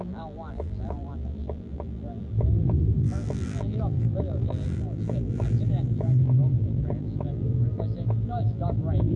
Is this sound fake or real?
fake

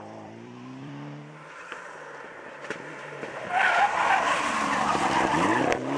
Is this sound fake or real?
fake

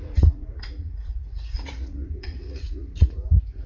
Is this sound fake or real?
fake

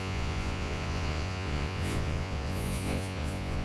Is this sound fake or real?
fake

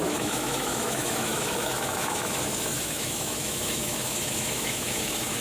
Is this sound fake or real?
fake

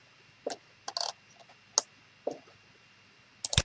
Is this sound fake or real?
real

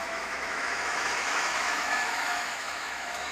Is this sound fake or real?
fake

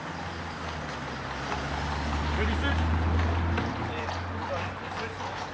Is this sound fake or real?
real